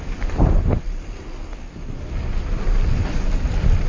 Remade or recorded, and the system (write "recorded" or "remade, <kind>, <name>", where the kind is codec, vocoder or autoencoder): recorded